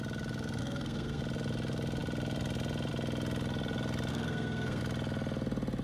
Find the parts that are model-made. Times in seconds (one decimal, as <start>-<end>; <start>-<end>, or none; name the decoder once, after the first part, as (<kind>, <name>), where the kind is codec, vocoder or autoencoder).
0.6-1.2 (codec, SNAC); 4.1-4.8

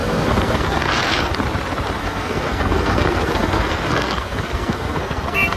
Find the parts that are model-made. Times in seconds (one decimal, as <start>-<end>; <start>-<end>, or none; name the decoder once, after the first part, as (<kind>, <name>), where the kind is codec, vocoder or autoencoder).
0.0-1.3 (codec, SNAC); 2.0-5.6

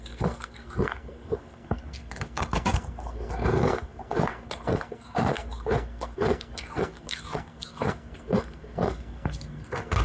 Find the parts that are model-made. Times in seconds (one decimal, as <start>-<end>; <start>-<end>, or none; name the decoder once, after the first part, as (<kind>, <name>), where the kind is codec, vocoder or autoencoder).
0.0-10.0 (codec, SNAC)

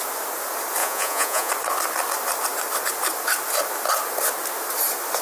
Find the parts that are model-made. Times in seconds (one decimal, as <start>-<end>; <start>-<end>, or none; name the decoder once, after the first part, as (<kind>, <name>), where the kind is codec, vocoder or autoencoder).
0.8-1.5 (vocoder, Vocos)

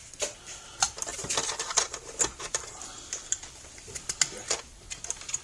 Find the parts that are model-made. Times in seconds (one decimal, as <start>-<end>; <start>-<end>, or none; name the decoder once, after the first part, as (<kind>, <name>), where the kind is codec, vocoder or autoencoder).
1.1-3.9 (vocoder, BigVGAN v2)

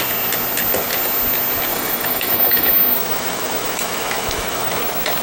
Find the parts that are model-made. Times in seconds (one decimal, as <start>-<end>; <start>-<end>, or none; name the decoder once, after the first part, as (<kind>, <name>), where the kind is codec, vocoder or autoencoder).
1.7-4.8 (autoencoder, DAC-VAE)